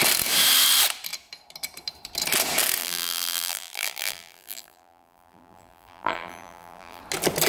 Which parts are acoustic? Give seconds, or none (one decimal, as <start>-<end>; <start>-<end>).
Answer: 0.0-2.8; 7.0-7.5